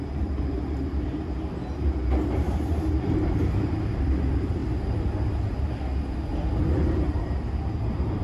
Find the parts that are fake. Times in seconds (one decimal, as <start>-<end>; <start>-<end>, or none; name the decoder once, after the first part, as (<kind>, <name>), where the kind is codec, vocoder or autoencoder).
0.0-4.6 (vocoder, BigVGAN v2); 6.6-8.2